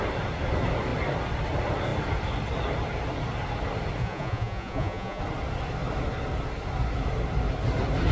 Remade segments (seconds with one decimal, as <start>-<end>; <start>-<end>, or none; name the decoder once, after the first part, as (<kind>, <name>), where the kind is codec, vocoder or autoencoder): 4.0-5.2 (vocoder, Vocos)